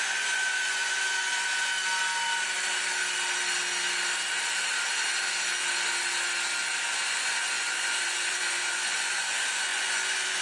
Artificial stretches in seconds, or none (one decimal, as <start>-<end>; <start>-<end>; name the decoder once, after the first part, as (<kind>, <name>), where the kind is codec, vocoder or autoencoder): 0.0-1.7 (vocoder, Vocos); 6.8-10.4